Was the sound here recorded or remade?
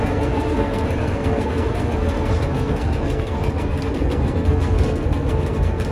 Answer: remade